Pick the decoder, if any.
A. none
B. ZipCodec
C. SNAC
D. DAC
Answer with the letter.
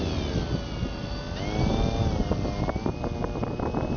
A